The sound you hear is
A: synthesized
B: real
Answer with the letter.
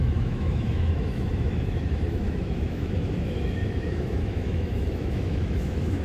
A